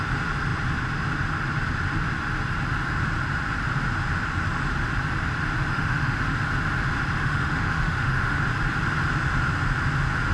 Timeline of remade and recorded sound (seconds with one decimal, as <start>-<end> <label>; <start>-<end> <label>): 0.0-5.7 recorded; 5.7-6.2 remade; 6.2-7.2 recorded; 7.2-8.4 remade; 8.4-10.3 recorded